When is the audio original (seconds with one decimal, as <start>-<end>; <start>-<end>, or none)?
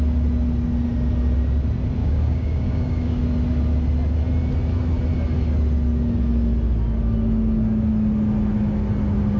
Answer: 0.0-2.0; 3.2-9.4